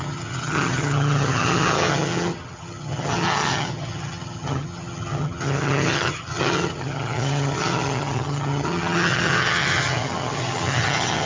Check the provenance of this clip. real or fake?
fake